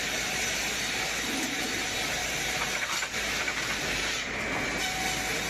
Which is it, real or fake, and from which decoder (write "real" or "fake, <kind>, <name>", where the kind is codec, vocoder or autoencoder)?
fake, vocoder, BigVGAN v2